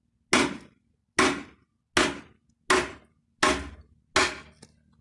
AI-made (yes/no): no